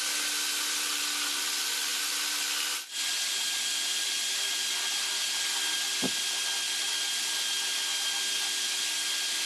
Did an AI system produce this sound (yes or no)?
no